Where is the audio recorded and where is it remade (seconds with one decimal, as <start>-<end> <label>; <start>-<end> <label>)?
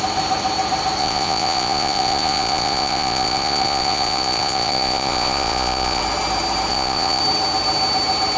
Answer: 0.0-1.0 recorded; 1.0-6.0 remade; 6.0-6.7 recorded; 6.7-7.2 remade; 7.2-8.4 recorded